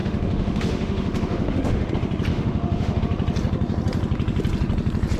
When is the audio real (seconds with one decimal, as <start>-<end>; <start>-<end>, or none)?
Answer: 1.9-2.3; 3.0-5.2